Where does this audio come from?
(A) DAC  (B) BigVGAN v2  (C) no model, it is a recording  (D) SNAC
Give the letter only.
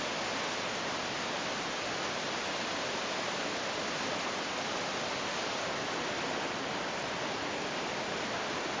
C